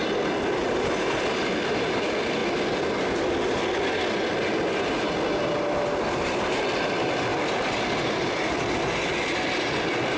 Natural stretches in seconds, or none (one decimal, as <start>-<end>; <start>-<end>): 0.0-10.2